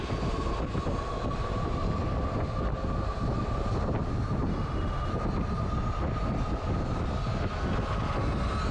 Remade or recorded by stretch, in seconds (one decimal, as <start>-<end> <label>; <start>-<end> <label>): 0.0-4.5 recorded; 4.5-5.1 remade; 5.1-8.7 recorded